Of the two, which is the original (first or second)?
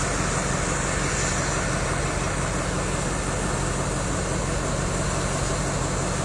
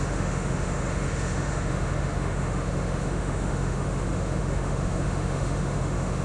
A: first